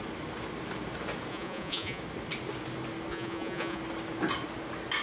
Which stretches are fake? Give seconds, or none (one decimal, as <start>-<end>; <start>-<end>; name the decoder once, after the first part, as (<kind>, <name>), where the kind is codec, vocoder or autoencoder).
1.3-2.0 (vocoder, Vocos); 3.1-3.8